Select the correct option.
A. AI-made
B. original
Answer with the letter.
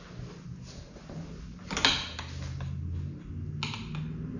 B